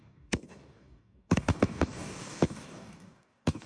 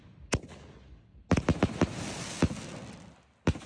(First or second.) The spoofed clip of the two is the first